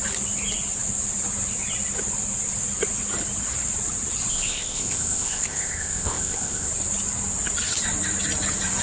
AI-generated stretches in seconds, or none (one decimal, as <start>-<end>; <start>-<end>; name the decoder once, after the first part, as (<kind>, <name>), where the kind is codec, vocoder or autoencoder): 4.3-6.7 (codec, ZipCodec)